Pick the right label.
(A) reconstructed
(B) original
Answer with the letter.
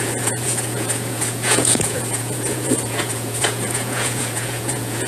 A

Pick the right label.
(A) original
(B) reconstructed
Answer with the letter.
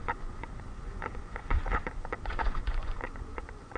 B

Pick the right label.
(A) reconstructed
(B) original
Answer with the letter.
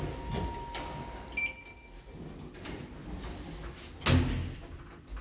B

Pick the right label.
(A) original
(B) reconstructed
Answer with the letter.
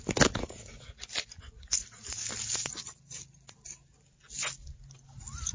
A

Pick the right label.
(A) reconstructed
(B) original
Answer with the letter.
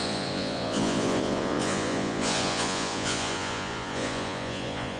A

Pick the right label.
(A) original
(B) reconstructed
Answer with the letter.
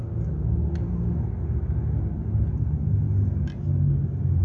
A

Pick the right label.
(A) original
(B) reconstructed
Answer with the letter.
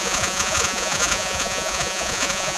B